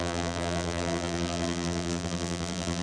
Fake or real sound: fake